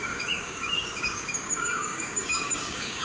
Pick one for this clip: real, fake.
fake